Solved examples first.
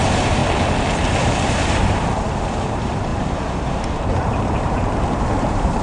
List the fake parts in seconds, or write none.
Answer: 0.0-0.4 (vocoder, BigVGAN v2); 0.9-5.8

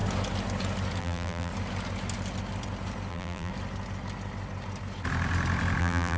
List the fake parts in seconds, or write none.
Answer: 1.0-1.5 (vocoder, BigVGAN v2); 3.1-3.5; 5.8-6.2

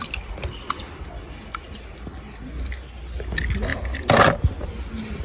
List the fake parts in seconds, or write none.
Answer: none